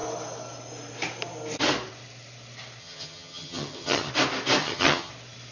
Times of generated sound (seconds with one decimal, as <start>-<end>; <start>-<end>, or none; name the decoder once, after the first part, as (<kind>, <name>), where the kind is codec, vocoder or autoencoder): 2.8-4.1 (vocoder, HiFi-GAN); 4.6-5.1